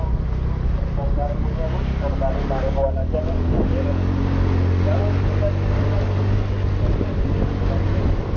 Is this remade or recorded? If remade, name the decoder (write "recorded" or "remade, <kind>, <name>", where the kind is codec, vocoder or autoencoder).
recorded